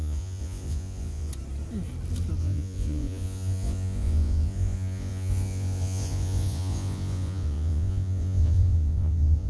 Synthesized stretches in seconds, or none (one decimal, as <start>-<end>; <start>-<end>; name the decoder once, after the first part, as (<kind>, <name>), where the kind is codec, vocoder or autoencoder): 0.0-1.3 (vocoder, Vocos); 2.4-9.5

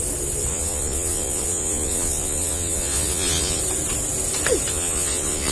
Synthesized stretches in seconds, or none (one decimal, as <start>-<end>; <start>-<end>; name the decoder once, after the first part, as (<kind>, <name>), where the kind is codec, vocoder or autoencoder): 0.5-3.6 (vocoder, Vocos); 4.7-5.5